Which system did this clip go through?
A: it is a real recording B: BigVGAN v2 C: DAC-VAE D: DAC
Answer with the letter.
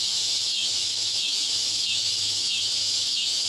C